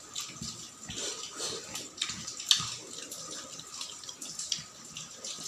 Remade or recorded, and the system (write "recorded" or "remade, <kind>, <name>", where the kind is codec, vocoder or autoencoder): recorded